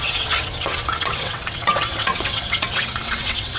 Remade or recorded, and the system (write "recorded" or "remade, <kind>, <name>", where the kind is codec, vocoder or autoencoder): remade, vocoder, WaveNeXt